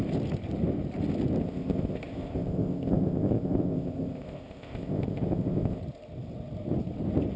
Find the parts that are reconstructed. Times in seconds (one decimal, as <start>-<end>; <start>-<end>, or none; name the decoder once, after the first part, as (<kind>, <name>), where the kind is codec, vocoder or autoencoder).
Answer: 1.4-5.8 (codec, ZipCodec)